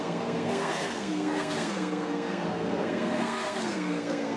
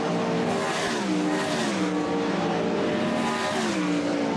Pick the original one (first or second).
second